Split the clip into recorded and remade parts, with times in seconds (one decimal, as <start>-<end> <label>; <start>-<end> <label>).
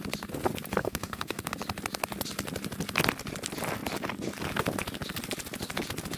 0.0-0.8 recorded; 0.8-1.5 remade; 1.5-6.2 recorded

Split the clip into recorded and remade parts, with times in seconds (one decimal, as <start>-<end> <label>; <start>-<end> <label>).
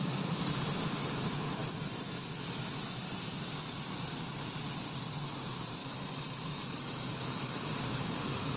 0.0-5.8 recorded; 5.8-7.5 remade; 7.5-8.6 recorded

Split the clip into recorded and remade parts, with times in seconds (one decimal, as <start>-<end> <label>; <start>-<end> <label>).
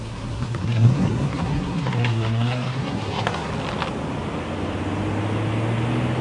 0.0-3.5 remade; 3.5-6.2 recorded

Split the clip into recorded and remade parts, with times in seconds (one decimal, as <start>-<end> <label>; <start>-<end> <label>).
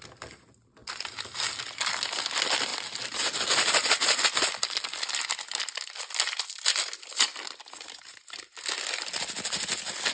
0.0-10.1 recorded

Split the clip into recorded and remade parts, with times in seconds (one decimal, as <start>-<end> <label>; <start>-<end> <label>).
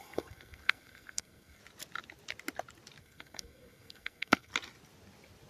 0.0-1.6 remade; 1.6-3.0 recorded; 3.0-4.5 remade; 4.5-5.5 recorded